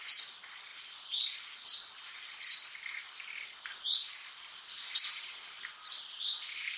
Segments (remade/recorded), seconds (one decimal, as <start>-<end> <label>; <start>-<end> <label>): 0.0-6.8 recorded

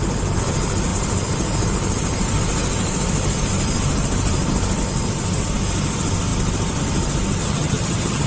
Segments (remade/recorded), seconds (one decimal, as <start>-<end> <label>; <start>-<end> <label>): 0.0-7.4 recorded; 7.4-8.3 remade

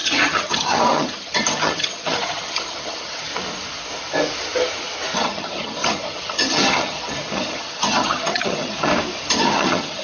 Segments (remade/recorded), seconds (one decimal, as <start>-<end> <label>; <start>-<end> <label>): 0.0-3.3 remade; 3.3-5.2 recorded; 5.2-8.9 remade; 8.9-9.4 recorded; 9.4-10.0 remade

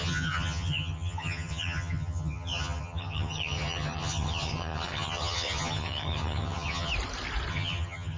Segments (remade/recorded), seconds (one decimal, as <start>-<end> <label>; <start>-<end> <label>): 0.0-6.9 remade; 6.9-7.5 recorded; 7.5-8.2 remade

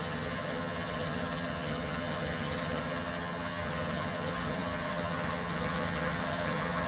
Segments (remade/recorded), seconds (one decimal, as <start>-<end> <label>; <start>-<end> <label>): 0.0-6.9 remade

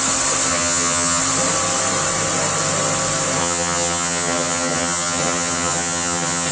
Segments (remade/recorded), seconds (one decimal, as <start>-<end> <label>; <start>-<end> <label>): 0.0-0.5 recorded; 0.5-1.2 remade; 1.2-3.4 recorded; 3.4-6.5 remade

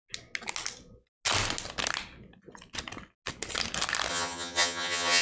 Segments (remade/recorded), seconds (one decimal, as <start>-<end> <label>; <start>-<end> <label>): 0.0-4.1 recorded; 4.1-5.2 remade